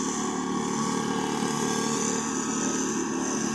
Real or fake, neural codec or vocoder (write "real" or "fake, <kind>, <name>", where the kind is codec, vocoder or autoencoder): real